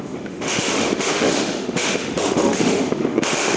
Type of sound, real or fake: fake